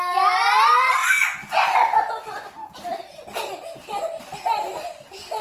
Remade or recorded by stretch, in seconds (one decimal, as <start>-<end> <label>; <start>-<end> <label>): 0.0-1.0 remade; 1.0-4.2 recorded; 4.2-5.4 remade